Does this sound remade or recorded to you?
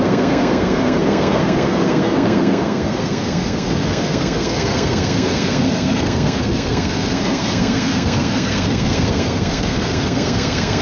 remade